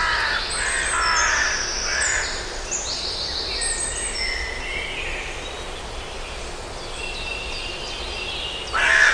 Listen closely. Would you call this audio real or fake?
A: real